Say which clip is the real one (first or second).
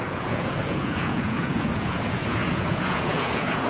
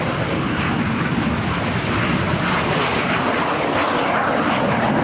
second